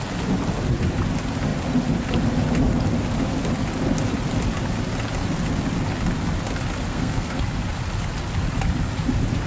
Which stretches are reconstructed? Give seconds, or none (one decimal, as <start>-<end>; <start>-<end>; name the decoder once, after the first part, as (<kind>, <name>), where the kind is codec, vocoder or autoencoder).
6.9-7.4 (codec, SNAC)